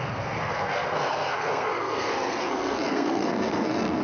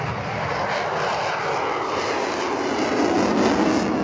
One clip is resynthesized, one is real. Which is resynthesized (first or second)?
first